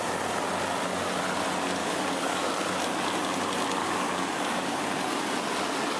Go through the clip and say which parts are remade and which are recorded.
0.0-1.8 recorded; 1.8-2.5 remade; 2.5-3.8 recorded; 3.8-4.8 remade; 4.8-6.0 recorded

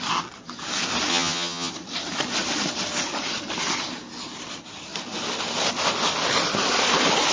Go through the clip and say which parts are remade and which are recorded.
0.0-1.1 recorded; 1.1-1.7 remade; 1.7-7.3 recorded

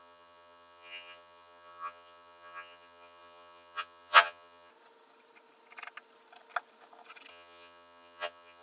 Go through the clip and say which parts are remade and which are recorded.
0.0-4.7 remade; 4.7-7.3 recorded; 7.3-8.6 remade

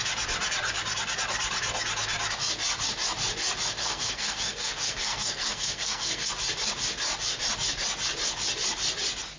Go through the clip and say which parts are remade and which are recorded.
0.0-3.8 recorded; 3.8-6.3 remade; 6.3-9.4 recorded

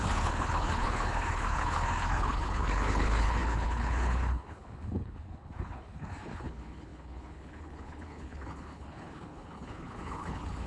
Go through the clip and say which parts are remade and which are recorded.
0.0-10.7 remade